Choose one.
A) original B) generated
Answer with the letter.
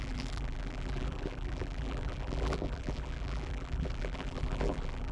B